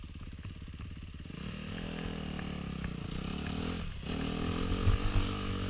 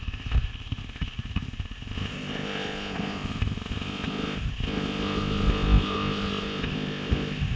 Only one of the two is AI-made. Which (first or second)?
second